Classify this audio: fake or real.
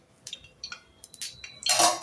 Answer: real